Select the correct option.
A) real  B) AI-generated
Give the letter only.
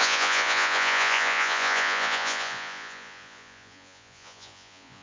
B